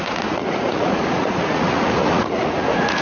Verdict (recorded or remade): remade